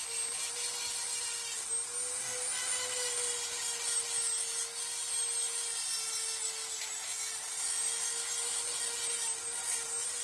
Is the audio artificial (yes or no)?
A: no